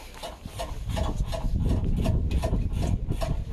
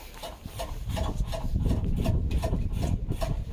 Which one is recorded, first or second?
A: first